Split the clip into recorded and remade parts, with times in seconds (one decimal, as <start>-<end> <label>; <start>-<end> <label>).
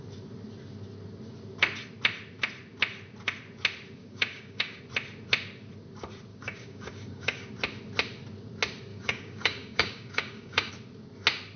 0.0-4.0 recorded; 4.0-4.8 remade; 4.8-6.3 recorded; 6.3-7.5 remade; 7.5-8.9 recorded; 8.9-10.7 remade; 10.7-11.6 recorded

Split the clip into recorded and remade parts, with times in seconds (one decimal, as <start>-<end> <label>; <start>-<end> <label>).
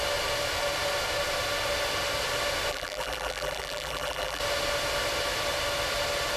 0.0-2.7 recorded; 2.7-4.4 remade; 4.4-6.4 recorded